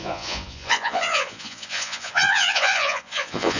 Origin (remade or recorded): remade